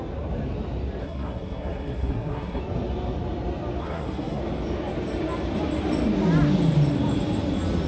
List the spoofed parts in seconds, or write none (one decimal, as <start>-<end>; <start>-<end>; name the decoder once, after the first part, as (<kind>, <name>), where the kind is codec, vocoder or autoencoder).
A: 1.0-2.6 (codec, SNAC); 3.8-4.4